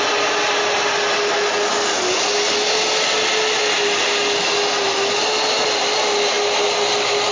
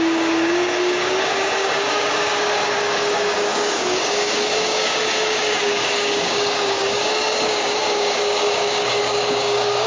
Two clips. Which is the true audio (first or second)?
first